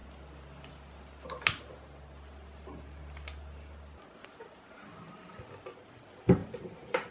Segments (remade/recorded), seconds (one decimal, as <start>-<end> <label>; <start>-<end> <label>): 0.0-6.4 recorded; 6.4-7.1 remade